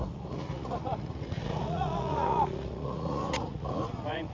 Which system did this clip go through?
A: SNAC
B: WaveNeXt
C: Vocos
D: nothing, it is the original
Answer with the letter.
C